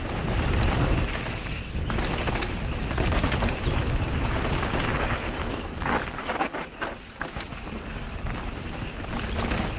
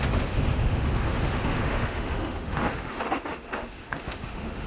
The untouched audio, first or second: first